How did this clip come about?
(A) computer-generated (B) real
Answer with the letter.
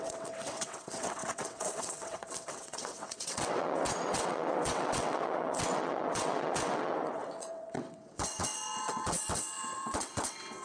A